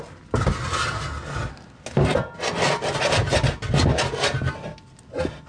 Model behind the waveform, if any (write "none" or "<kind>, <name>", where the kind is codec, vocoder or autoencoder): none